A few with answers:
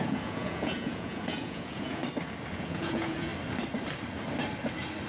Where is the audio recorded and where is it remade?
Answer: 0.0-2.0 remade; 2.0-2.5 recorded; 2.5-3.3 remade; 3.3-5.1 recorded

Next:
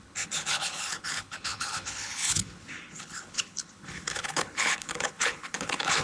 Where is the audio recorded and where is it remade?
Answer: 0.0-6.0 remade